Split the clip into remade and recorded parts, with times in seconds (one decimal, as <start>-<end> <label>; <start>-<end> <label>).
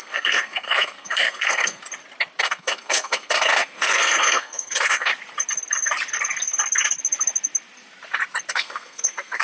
0.0-1.8 remade; 1.8-2.4 recorded; 2.4-5.1 remade; 5.1-8.5 recorded; 8.5-9.4 remade